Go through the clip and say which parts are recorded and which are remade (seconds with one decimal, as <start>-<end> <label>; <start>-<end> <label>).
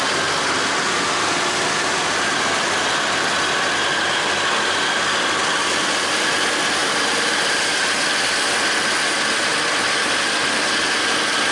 0.0-6.8 recorded; 6.8-8.0 remade; 8.0-11.5 recorded